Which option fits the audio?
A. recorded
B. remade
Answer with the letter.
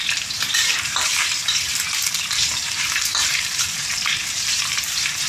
B